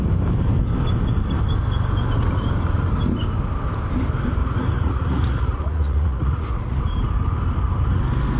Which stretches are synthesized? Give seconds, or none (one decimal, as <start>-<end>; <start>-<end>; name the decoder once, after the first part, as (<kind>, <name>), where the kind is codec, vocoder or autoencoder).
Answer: 4.4-6.8 (vocoder, Vocos)